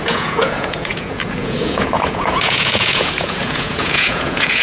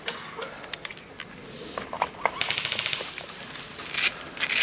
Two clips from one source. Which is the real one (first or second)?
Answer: second